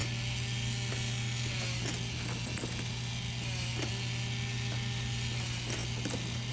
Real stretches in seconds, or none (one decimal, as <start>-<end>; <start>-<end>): 0.0-6.5